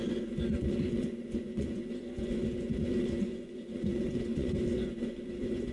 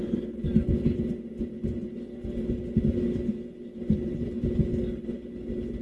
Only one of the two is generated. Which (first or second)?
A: first